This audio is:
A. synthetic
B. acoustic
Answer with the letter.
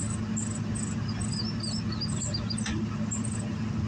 B